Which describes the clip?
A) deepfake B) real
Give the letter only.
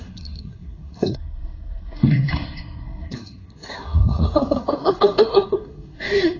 A